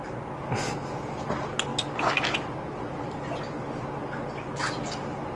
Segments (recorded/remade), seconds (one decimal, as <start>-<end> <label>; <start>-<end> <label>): 0.0-5.4 recorded